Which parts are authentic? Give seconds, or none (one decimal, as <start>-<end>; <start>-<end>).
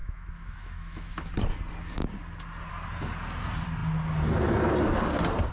1.3-5.5